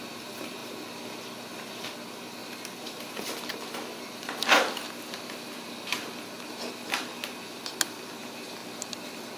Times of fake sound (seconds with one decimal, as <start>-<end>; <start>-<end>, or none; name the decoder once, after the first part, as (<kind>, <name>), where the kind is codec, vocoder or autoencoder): none

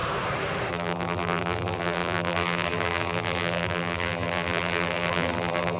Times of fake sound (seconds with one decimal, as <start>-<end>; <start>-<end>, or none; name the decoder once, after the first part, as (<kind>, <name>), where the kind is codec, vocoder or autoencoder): 0.7-5.8 (vocoder, BigVGAN v2)

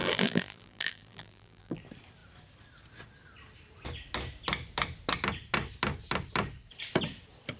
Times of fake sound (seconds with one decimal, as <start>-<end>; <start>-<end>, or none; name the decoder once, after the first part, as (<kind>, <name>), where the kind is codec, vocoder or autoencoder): 0.0-1.8 (vocoder, BigVGAN v2)

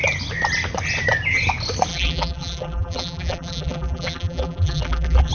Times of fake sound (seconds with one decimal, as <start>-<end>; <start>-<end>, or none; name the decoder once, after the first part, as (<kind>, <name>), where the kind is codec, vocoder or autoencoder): 1.9-5.3 (vocoder, BigVGAN v2)

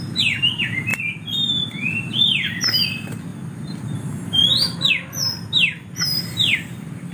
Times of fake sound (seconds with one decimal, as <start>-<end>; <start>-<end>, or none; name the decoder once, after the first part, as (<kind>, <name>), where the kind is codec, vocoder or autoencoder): 0.0-0.9 (vocoder, BigVGAN v2); 1.6-7.1